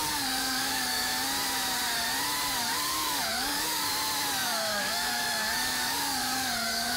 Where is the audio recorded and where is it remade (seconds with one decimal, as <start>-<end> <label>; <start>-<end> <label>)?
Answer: 0.0-1.1 remade; 1.1-2.6 recorded; 2.6-3.9 remade; 3.9-4.4 recorded; 4.4-7.0 remade